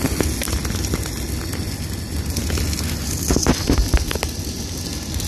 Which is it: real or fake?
real